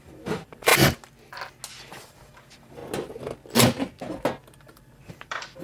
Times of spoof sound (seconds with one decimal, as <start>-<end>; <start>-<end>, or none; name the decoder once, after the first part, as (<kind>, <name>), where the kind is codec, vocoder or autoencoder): 0.0-0.7 (vocoder, BigVGAN v2); 1.7-2.8; 4.6-5.6